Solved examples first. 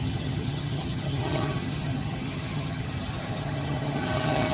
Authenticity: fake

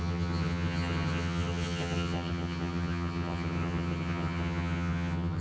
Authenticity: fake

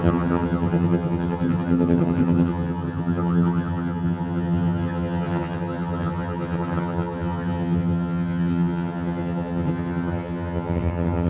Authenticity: fake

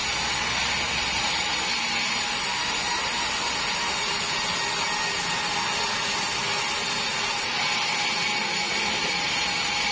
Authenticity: real